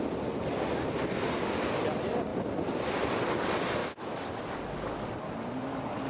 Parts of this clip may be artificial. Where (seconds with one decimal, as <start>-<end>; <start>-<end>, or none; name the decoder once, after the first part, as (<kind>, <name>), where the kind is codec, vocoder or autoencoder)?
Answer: 3.8-4.3 (autoencoder, DAC-VAE)